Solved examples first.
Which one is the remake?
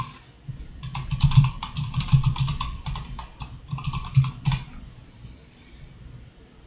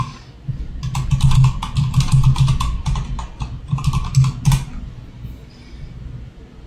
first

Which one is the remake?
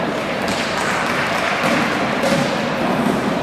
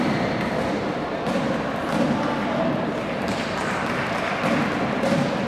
first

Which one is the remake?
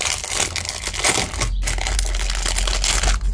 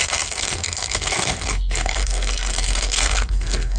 second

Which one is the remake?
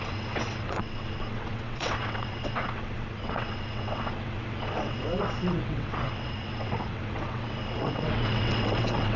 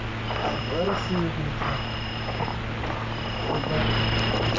first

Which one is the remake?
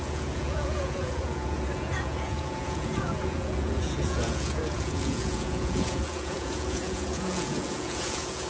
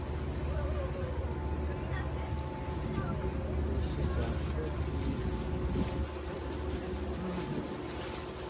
first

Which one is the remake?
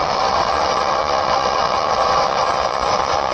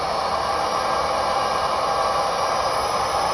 first